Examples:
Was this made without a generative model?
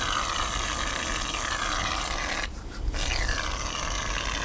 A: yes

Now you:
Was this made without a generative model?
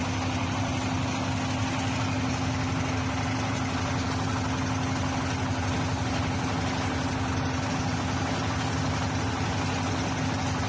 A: yes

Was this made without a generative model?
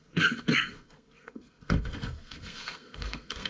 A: no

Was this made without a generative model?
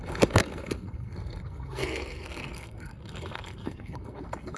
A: no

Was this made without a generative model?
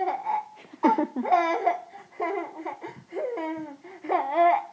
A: yes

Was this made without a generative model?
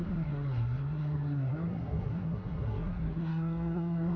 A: no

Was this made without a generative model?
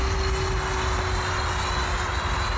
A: yes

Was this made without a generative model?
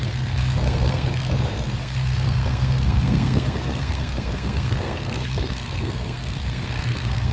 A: no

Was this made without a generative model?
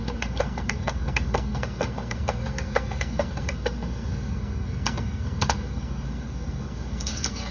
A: no